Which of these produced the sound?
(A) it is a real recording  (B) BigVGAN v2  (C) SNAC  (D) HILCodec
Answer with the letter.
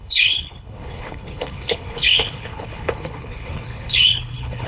D